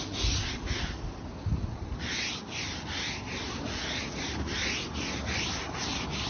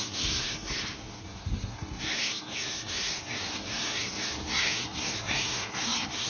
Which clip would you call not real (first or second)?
second